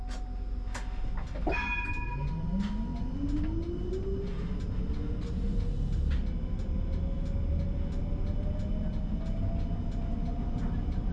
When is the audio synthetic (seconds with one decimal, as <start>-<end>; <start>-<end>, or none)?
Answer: none